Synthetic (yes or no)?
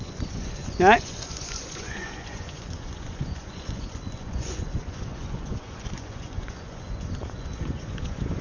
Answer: yes